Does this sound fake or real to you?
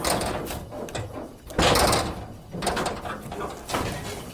real